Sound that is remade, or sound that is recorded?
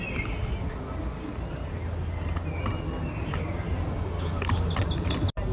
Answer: recorded